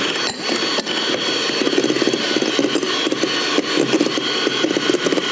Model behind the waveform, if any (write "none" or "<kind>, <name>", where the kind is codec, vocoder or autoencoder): none